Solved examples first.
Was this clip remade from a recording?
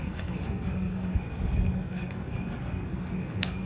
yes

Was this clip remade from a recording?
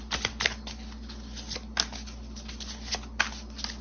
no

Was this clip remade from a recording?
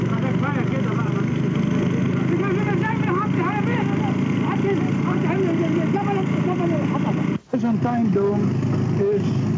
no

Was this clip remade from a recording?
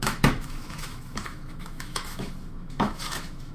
yes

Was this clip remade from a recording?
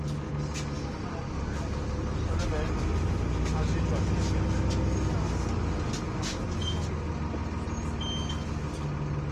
no